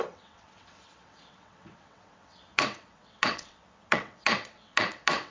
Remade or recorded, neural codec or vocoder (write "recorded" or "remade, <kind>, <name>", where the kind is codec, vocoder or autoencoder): remade, vocoder, WaveNeXt